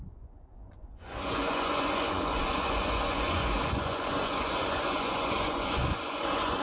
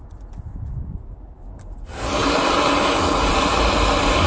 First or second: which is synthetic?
first